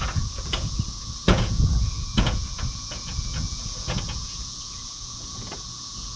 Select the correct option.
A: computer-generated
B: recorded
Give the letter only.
A